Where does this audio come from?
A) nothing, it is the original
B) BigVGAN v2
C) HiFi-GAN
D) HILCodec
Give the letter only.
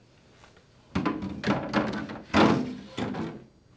A